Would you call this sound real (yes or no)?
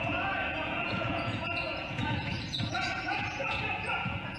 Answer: no